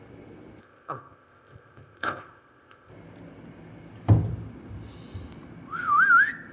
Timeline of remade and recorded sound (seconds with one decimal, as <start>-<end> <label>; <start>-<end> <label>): 0.0-0.6 recorded; 0.6-2.9 remade; 2.9-6.5 recorded